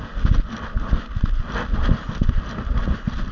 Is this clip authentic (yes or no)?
yes